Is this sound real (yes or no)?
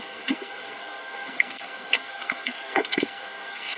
no